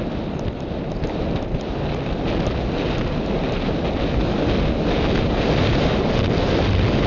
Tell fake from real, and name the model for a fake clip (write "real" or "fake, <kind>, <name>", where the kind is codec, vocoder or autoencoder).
real